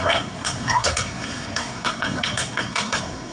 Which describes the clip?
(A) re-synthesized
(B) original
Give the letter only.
A